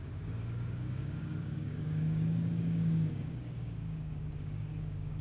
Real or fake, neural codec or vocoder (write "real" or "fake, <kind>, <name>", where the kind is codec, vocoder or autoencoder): fake, codec, DAC